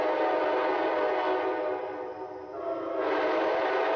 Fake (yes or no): no